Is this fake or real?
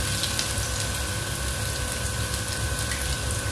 real